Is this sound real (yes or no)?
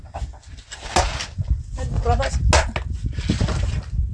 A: yes